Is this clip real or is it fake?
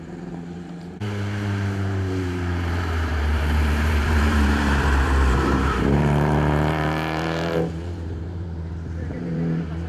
fake